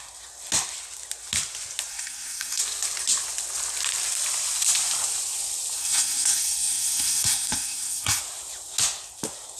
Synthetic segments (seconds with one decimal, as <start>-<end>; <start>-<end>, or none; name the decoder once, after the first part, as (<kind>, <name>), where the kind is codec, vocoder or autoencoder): 1.9-2.6 (codec, SNAC); 5.8-8.2